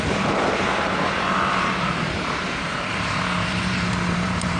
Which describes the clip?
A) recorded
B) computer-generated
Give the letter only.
B